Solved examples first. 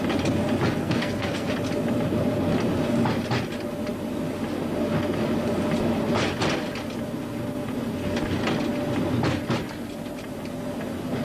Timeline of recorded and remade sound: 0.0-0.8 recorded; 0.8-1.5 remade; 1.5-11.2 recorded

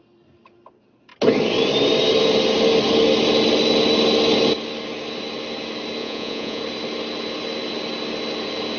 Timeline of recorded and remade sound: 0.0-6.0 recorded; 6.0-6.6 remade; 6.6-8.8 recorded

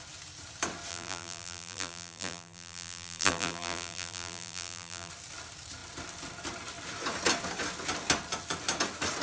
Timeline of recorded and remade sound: 0.0-0.9 recorded; 0.9-5.1 remade; 5.1-9.2 recorded

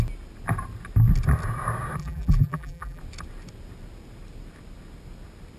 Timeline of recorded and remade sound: 0.0-2.0 recorded; 2.0-3.0 remade; 3.0-5.6 recorded